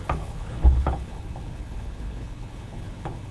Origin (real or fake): fake